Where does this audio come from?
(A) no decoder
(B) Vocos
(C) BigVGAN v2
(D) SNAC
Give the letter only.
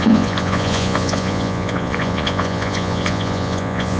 B